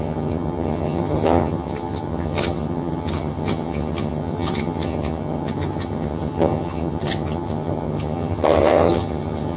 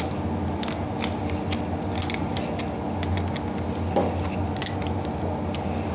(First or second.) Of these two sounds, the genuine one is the second